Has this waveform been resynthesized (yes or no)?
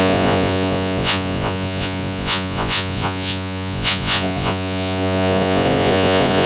yes